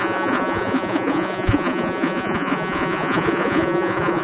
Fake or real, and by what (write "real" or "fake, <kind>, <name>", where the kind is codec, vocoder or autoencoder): fake, vocoder, Vocos